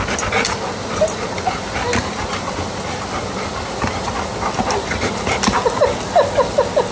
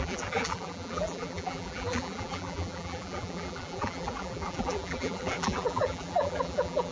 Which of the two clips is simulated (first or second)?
second